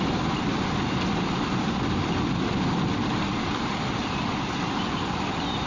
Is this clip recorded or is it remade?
recorded